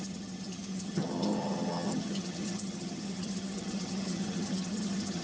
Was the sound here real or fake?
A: fake